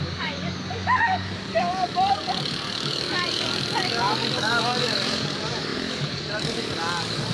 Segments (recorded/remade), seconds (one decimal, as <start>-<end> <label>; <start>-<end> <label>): 0.0-7.3 remade